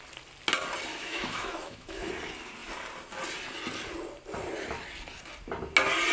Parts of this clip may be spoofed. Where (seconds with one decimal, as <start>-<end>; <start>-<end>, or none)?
0.9-2.1